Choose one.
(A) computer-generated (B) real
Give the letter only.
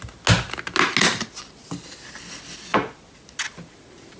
B